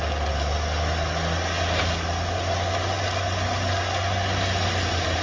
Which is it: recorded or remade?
recorded